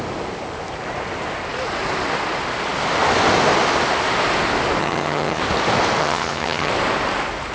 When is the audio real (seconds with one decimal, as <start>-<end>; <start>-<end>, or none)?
0.0-4.8; 5.4-6.0; 6.7-7.5

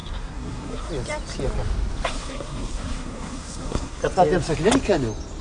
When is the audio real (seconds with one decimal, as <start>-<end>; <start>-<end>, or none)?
0.9-2.1; 4.0-5.4

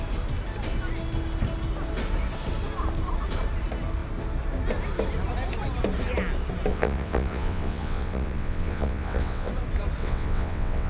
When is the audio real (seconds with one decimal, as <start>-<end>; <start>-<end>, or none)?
0.0-6.7; 9.5-10.0

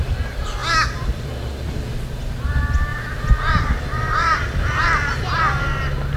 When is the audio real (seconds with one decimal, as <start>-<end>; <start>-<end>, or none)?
0.0-3.9; 5.4-6.2

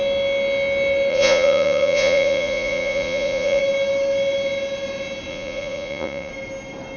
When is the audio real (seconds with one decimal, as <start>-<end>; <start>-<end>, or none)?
0.0-1.1; 3.6-5.3; 6.3-7.0

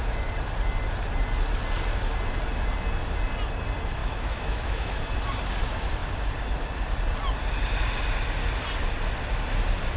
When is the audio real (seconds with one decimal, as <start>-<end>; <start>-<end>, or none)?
0.0-4.0; 5.0-10.0

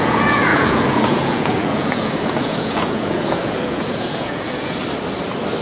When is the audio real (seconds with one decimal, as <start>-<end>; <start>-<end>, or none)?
4.8-5.6